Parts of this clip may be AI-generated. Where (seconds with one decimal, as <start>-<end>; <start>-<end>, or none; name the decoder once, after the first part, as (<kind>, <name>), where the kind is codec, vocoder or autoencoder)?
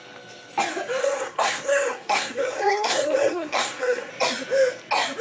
1.0-4.1 (codec, SNAC)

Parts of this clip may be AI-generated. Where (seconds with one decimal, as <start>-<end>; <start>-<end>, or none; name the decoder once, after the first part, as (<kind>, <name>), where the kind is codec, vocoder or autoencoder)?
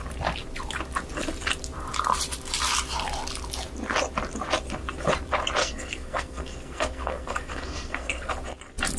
5.6-8.3 (codec, SNAC)